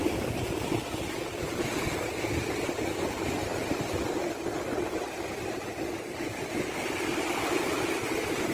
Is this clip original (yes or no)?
yes